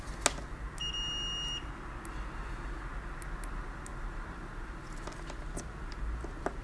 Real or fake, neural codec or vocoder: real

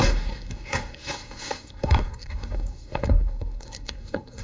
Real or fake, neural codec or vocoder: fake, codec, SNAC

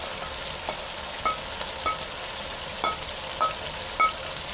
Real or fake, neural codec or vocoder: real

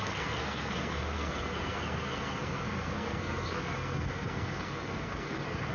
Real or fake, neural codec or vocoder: fake, codec, SNAC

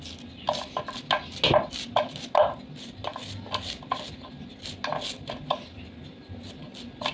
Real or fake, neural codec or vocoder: real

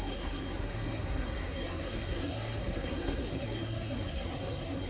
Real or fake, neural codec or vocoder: fake, codec, SNAC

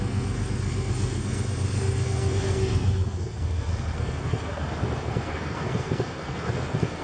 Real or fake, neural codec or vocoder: fake, codec, SNAC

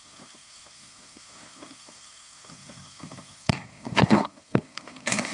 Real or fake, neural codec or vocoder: fake, codec, SNAC